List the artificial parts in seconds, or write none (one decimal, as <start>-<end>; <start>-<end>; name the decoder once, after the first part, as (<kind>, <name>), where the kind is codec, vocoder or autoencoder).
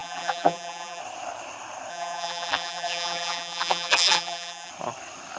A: 0.0-1.0 (vocoder, BigVGAN v2); 1.9-4.7